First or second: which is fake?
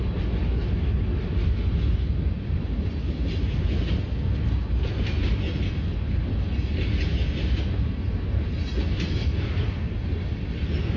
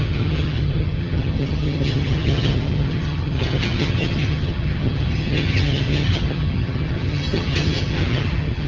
second